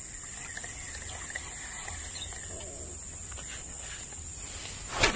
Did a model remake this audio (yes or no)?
no